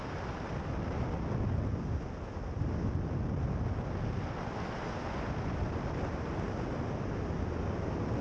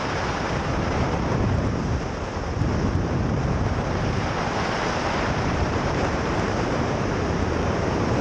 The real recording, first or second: first